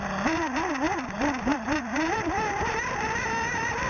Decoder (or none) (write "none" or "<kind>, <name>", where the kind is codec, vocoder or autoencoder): vocoder, BigVGAN v2